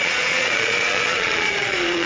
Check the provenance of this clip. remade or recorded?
remade